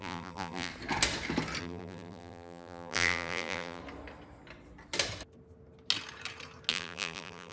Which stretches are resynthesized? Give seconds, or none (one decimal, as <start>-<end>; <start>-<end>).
0.0-0.7; 1.6-3.8; 6.7-7.5